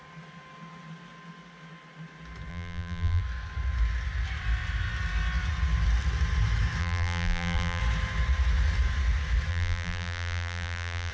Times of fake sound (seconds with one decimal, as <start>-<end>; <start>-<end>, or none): 2.5-3.2; 6.8-7.8; 9.5-11.1